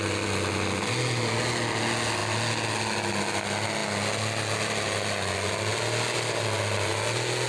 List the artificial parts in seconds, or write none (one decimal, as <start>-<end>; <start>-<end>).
none